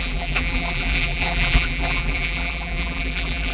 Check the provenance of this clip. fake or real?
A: fake